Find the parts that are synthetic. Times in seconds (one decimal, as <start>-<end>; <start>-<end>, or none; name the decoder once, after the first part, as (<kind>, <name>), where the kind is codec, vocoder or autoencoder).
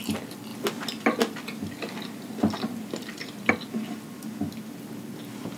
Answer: none